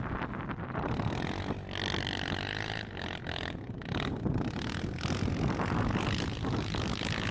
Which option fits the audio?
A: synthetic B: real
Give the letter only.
B